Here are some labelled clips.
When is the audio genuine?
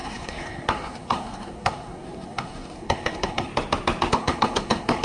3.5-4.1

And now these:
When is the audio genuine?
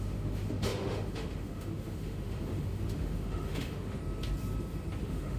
4.0-5.0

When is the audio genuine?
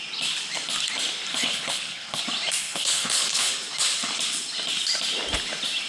0.0-1.3; 2.2-2.6; 3.6-5.9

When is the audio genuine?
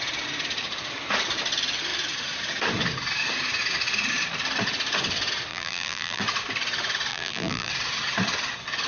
0.0-5.5; 6.2-7.1; 7.7-8.9